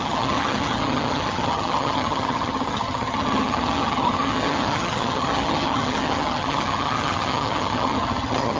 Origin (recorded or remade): remade